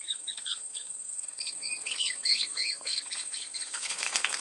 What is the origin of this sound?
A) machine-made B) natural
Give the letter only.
A